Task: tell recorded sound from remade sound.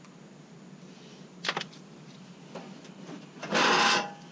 recorded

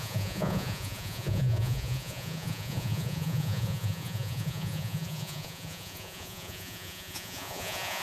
remade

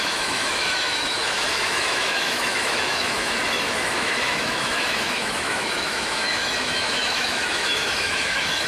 remade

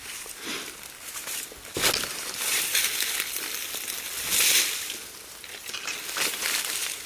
recorded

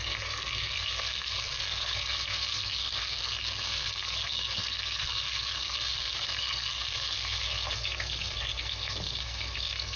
remade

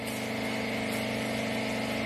recorded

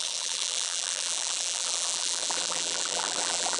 remade